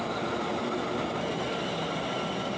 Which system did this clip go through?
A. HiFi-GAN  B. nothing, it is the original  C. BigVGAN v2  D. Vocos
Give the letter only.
B